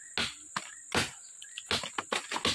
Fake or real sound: real